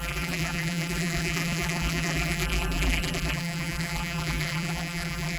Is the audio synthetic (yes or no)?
yes